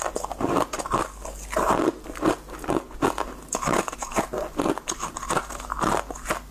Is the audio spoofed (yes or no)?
no